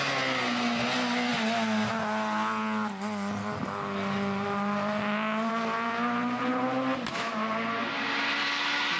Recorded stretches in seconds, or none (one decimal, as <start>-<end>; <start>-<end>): 0.0-9.0